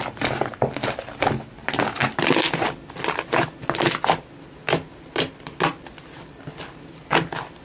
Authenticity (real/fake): real